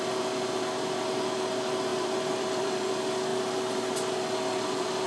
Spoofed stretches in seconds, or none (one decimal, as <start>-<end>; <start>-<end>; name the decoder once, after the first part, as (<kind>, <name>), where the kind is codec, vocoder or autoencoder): 1.9-2.9 (vocoder, BigVGAN v2); 3.3-4.2